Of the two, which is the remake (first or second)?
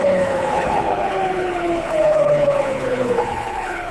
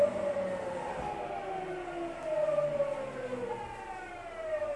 first